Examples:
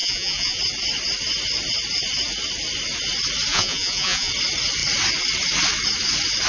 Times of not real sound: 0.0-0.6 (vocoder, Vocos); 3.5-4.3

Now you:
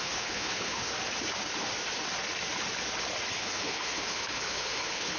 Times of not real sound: 0.0-0.9 (codec, HILCodec); 3.3-5.2

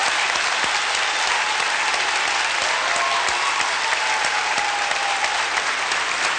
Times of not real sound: none

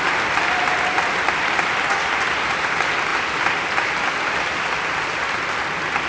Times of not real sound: none

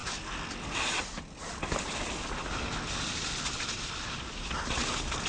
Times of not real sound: none

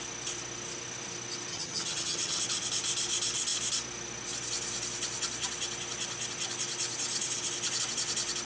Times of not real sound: 1.5-2.4 (vocoder, HiFi-GAN)

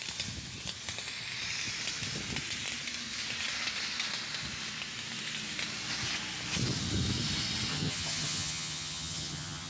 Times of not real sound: 7.7-9.7 (vocoder, HiFi-GAN)